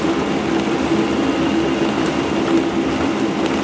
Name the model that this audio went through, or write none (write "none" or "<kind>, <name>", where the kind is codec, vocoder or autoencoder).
none